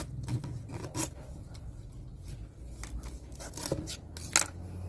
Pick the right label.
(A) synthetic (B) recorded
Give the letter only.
B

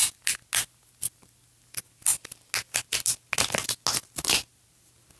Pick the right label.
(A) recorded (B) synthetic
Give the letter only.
A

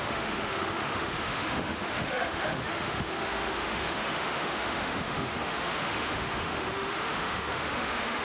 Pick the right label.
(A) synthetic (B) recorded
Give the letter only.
A